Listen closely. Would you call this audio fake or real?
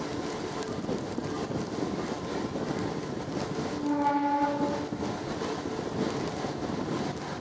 real